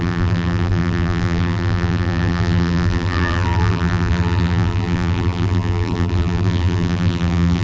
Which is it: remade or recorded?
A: remade